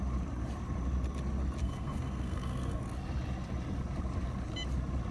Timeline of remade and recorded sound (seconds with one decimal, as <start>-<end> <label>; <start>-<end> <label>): 0.0-1.6 recorded; 1.6-2.8 remade; 2.8-5.1 recorded